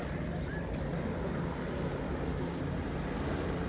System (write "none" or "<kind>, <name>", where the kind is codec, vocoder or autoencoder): none